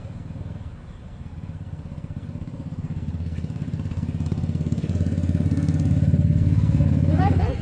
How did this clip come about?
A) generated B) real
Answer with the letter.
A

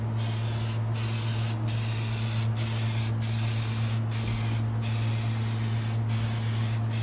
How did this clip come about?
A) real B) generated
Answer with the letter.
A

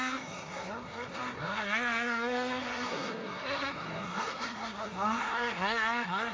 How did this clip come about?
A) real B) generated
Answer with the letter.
B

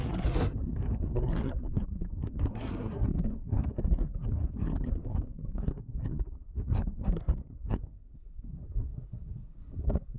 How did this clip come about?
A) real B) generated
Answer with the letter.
B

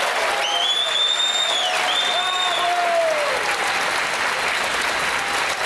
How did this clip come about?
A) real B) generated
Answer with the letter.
A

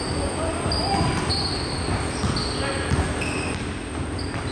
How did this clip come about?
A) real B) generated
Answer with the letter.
A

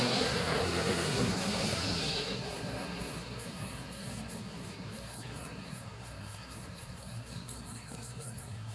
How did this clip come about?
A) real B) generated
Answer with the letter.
B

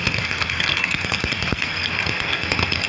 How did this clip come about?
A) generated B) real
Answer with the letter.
A